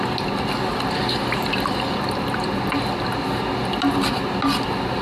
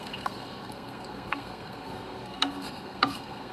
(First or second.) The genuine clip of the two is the first